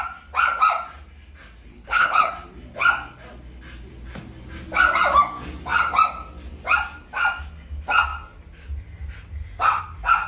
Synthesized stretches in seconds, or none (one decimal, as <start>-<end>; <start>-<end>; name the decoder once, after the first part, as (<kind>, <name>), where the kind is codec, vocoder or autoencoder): 1.7-2.3 (codec, HILCodec)